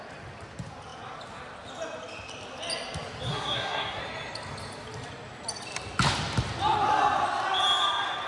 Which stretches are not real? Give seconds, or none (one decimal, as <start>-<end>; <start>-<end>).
3.3-4.0